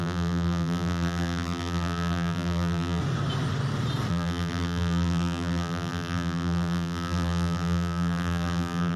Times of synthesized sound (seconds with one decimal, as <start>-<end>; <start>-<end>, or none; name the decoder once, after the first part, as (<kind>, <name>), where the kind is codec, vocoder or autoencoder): 0.0-3.0 (vocoder, BigVGAN v2); 4.1-9.0